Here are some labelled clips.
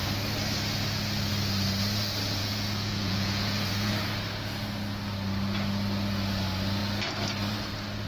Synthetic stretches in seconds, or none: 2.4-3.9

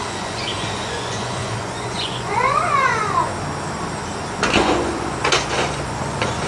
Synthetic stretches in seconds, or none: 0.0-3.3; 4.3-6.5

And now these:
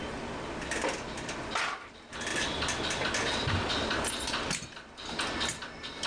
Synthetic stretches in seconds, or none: none